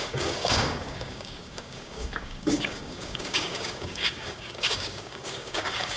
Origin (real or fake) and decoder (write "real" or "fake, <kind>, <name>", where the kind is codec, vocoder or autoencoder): fake, codec, DAC